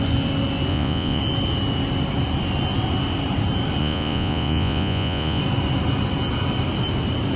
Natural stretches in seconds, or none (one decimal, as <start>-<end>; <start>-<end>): 0.0-0.7; 1.2-3.8; 5.4-7.4